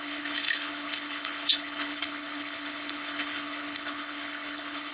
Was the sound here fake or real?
fake